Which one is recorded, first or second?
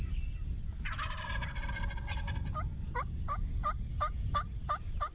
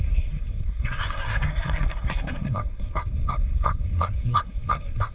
first